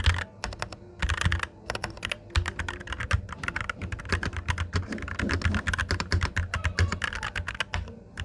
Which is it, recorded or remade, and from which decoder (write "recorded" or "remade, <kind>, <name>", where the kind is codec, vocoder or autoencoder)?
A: recorded